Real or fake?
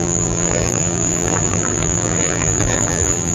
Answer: fake